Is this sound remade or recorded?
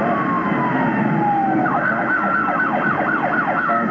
recorded